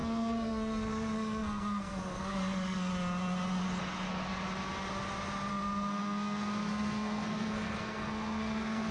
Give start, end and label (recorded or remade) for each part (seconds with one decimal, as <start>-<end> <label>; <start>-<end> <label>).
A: 0.0-2.9 remade; 2.9-5.5 recorded; 5.5-8.9 remade